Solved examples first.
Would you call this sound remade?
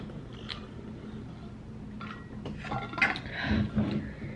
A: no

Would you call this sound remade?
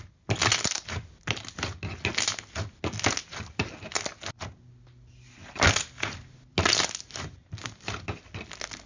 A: no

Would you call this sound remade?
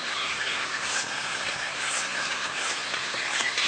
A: yes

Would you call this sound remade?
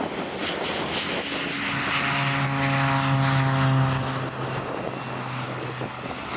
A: no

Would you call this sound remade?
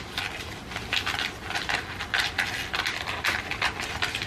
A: no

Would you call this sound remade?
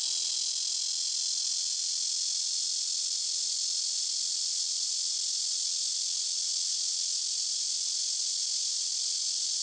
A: no